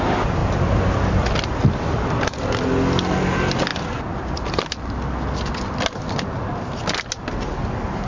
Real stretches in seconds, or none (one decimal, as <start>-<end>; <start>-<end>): 0.0-8.1